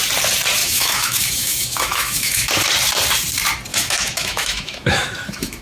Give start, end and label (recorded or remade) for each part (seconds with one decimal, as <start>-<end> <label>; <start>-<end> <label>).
0.0-0.6 recorded; 0.6-2.5 remade; 2.5-3.7 recorded; 3.7-5.6 remade